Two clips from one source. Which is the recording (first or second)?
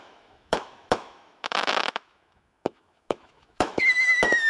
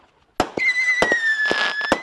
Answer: second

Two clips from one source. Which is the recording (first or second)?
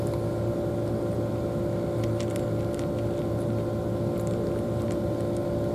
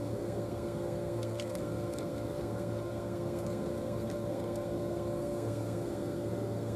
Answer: first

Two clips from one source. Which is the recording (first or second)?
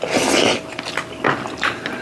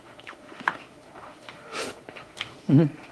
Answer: first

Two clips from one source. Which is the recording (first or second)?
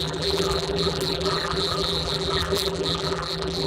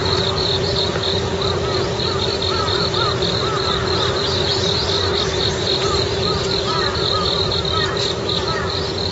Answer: second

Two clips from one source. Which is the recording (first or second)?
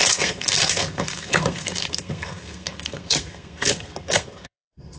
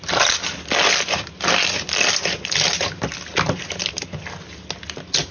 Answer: second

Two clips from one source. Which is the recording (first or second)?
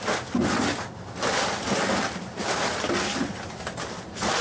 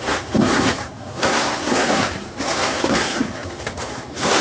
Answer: first